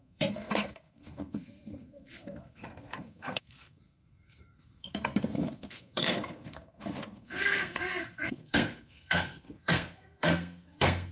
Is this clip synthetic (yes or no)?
yes